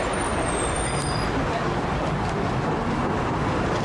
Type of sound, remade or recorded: recorded